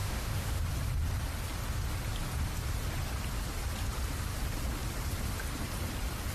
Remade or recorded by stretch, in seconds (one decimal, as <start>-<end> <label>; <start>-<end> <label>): 0.0-0.6 remade; 0.6-6.3 recorded